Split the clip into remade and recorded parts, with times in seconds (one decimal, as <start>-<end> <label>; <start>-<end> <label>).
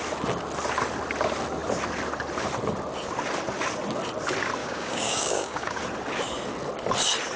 0.0-4.6 recorded; 4.6-5.8 remade; 5.8-7.4 recorded